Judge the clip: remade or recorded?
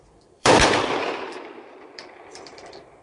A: remade